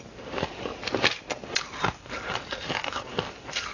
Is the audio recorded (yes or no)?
yes